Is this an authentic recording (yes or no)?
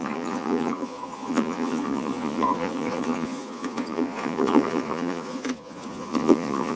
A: no